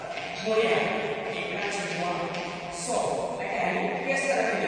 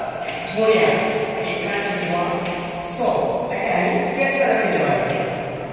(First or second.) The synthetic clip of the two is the first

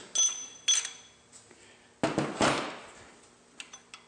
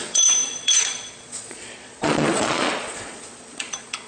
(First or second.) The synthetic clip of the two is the second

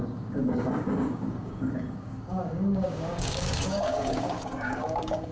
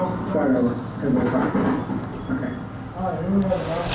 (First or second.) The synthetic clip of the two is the first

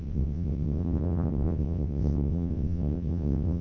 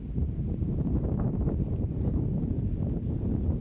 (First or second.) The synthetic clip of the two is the first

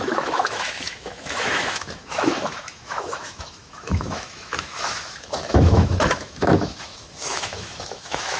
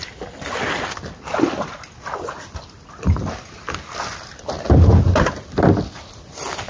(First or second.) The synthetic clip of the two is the first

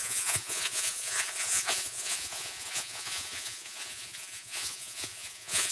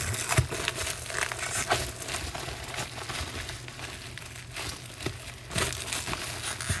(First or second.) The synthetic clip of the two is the first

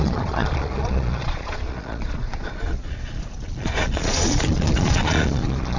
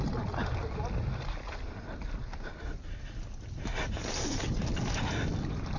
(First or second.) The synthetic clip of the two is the first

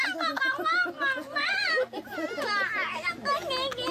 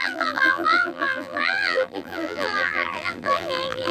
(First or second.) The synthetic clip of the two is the second